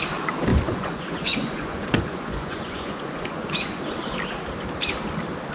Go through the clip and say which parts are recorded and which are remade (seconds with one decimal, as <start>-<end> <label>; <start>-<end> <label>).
0.0-0.5 recorded; 0.5-3.8 remade; 3.8-5.5 recorded